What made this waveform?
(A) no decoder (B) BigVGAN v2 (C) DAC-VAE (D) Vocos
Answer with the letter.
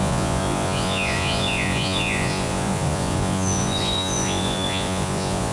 D